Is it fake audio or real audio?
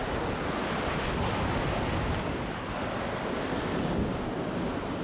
real